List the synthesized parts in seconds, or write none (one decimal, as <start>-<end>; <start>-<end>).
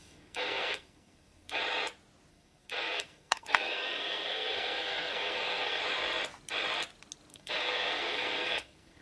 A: 0.0-1.6; 2.3-5.8; 7.3-9.0